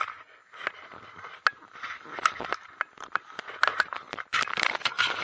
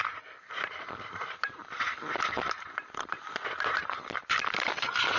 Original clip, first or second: first